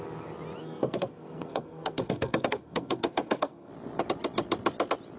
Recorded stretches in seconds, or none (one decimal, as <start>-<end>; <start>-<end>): 0.0-0.6; 3.7-5.2